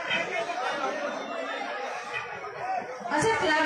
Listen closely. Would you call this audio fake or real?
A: real